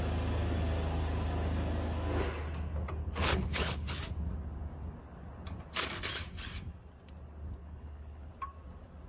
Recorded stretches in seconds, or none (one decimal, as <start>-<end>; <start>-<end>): 0.0-3.0; 4.0-7.6; 8.3-9.1